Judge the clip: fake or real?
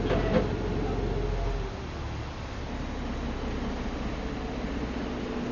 real